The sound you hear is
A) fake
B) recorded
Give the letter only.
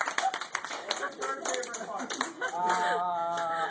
B